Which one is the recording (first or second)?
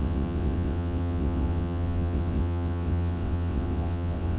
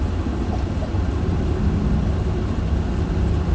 second